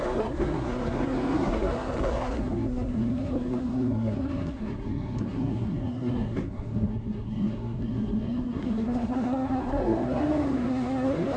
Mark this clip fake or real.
fake